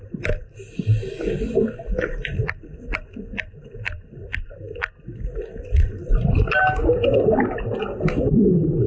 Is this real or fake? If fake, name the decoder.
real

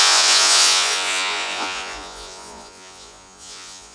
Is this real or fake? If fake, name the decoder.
fake, vocoder, Vocos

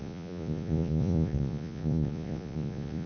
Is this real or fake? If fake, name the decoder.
fake, vocoder, Vocos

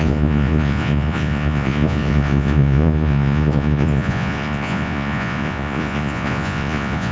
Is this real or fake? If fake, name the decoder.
fake, vocoder, Vocos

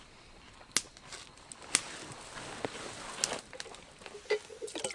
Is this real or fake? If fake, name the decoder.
real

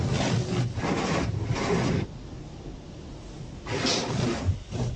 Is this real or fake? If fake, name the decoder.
real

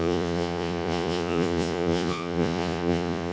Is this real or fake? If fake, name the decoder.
fake, vocoder, Vocos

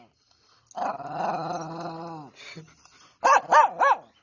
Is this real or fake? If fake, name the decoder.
real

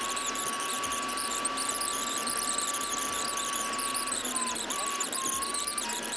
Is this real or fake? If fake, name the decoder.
real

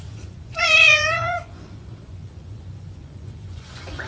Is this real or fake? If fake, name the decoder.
fake, vocoder, Vocos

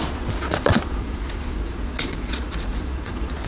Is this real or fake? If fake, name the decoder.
fake, vocoder, Vocos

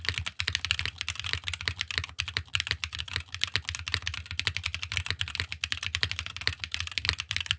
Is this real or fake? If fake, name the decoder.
real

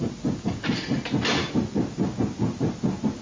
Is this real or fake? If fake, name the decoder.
real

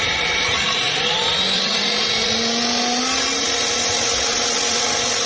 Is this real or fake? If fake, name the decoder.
real